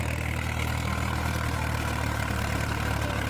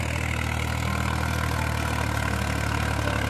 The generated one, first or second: first